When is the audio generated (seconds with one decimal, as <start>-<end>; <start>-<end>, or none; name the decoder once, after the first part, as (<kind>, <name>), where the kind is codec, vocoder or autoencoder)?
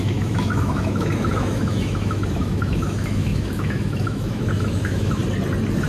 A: 0.0-5.2 (autoencoder, DAC-VAE)